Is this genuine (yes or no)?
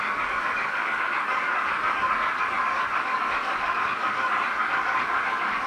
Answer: no